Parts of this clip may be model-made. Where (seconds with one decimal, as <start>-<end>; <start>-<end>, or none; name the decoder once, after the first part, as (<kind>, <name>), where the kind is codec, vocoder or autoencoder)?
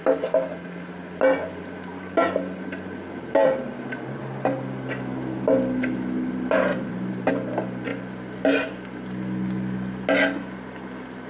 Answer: 6.7-7.3 (vocoder, BigVGAN v2)